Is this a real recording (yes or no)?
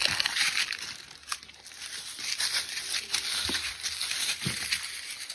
yes